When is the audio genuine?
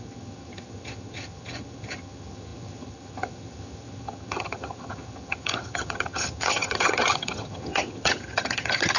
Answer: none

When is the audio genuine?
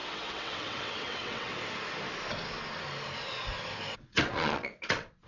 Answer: 1.5-3.9